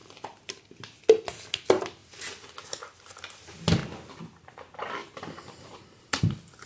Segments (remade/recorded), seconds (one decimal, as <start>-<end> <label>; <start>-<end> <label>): 0.0-0.6 remade; 0.6-5.0 recorded; 5.0-6.2 remade; 6.2-6.7 recorded